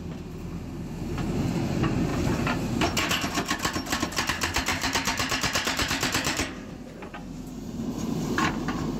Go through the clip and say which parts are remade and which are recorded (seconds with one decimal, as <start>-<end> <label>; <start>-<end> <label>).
0.0-2.1 recorded; 2.1-3.3 remade; 3.3-4.7 recorded; 4.7-6.7 remade; 6.7-7.2 recorded; 7.2-8.5 remade; 8.5-9.0 recorded

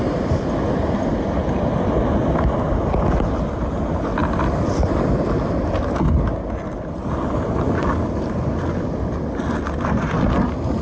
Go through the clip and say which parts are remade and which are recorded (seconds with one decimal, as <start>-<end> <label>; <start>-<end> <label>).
0.0-10.8 recorded

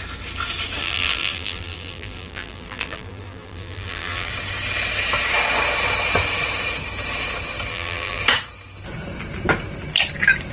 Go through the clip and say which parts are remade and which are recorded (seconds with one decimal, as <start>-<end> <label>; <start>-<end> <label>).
0.0-0.8 recorded; 0.8-4.3 remade; 4.3-7.7 recorded; 7.7-8.2 remade; 8.2-10.5 recorded

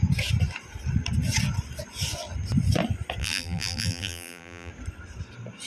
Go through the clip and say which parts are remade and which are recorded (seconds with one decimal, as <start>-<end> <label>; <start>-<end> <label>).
0.0-3.2 recorded; 3.2-4.7 remade; 4.7-5.7 recorded

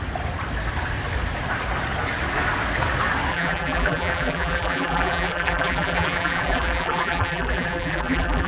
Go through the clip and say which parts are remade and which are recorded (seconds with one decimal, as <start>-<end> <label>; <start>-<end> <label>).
0.0-3.3 recorded; 3.3-8.5 remade

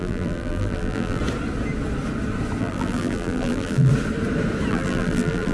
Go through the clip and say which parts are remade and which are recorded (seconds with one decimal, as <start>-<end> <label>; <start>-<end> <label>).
0.0-1.2 remade; 1.2-2.6 recorded; 2.6-3.9 remade; 3.9-4.7 recorded; 4.7-5.5 remade

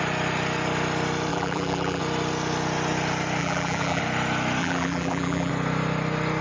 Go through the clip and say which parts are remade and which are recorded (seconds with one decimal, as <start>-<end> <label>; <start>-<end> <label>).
0.0-1.3 recorded; 1.3-2.0 remade; 2.0-3.4 recorded; 3.4-4.0 remade; 4.0-4.6 recorded; 4.6-5.5 remade; 5.5-6.4 recorded

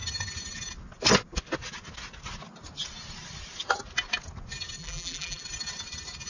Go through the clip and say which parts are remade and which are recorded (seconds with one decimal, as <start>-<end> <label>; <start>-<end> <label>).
0.0-4.8 recorded; 4.8-5.4 remade; 5.4-6.3 recorded